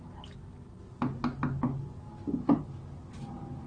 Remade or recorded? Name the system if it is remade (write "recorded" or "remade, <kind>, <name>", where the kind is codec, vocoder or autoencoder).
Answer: recorded